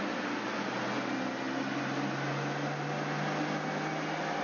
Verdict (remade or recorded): recorded